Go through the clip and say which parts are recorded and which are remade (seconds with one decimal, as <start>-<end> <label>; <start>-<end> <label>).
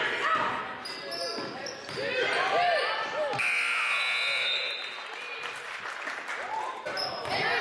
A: 0.0-7.6 recorded